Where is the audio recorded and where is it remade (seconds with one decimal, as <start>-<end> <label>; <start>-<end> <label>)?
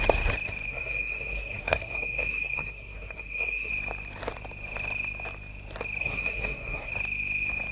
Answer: 0.0-0.7 recorded; 0.7-3.7 remade; 3.7-6.0 recorded; 6.0-6.9 remade; 6.9-7.7 recorded